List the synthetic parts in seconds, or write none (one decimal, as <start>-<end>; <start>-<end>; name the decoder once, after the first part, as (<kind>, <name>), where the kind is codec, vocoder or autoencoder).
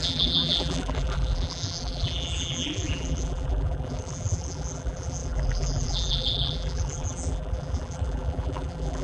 0.0-9.0 (vocoder, BigVGAN v2)